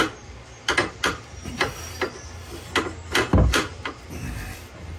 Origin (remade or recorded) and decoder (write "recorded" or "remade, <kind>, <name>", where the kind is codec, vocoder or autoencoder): recorded